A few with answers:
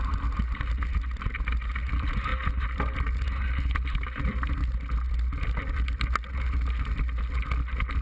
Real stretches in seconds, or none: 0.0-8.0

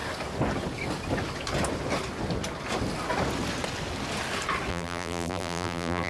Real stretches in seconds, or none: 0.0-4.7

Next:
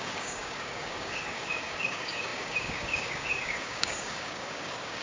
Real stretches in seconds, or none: none